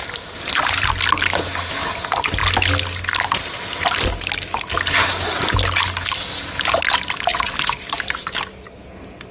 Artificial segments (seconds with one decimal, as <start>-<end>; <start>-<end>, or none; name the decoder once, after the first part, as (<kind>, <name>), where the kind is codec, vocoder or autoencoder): 0.0-0.9 (vocoder, BigVGAN v2); 7.3-8.3